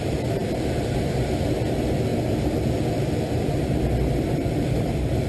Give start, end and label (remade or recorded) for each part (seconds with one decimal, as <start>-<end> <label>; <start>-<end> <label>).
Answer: 0.0-2.1 recorded; 2.1-5.3 remade